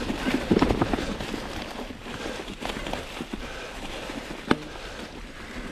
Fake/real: real